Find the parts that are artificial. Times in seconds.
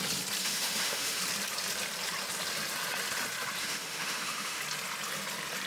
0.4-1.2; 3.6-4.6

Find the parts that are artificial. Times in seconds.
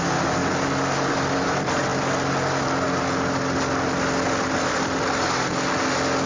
none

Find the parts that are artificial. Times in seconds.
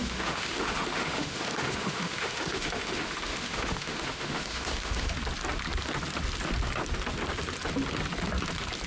0.0-5.1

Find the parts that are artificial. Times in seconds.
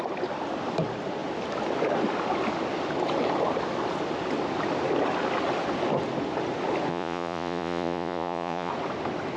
6.9-8.7